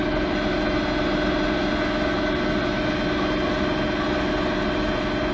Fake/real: real